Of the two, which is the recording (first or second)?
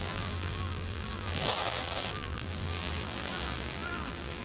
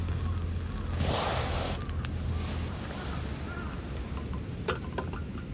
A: second